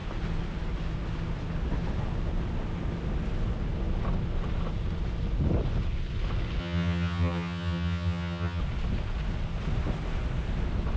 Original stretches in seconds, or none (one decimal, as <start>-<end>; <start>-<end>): 0.0-6.6; 8.6-11.0